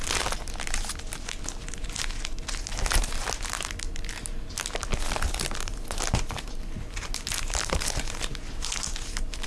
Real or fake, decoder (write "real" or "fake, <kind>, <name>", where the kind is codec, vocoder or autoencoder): real